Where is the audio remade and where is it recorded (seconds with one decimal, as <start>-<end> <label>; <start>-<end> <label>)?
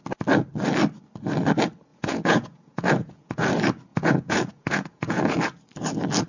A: 0.0-1.9 recorded; 1.9-3.5 remade; 3.5-3.9 recorded; 3.9-5.3 remade; 5.3-6.3 recorded